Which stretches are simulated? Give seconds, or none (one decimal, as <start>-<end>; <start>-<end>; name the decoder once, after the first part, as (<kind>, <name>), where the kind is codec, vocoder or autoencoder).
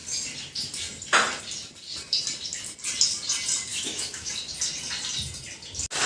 3.7-4.3 (autoencoder, DAC-VAE)